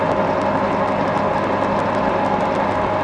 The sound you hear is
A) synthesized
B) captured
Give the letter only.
B